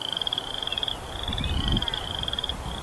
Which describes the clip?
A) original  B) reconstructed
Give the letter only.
A